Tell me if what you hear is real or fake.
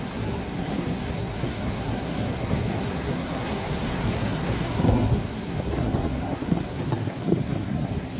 fake